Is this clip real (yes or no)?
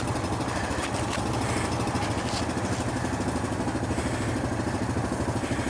yes